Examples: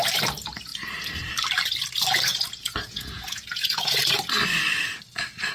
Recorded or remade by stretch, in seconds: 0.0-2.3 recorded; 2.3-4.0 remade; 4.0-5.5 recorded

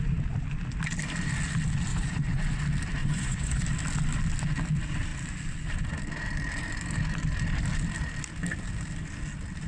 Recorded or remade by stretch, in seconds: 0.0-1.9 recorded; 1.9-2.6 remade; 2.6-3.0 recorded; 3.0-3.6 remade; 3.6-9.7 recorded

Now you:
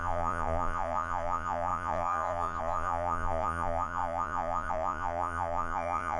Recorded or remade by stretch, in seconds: 0.0-6.2 remade